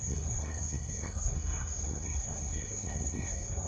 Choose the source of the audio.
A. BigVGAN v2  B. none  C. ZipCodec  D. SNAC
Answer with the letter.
D